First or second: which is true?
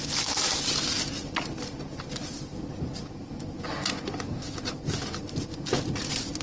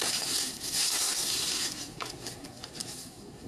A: first